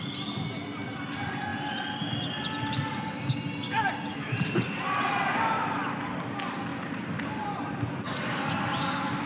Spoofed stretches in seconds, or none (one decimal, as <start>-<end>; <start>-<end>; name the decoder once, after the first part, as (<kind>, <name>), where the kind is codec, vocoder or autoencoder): 4.1-5.1 (vocoder, BigVGAN v2); 6.7-7.7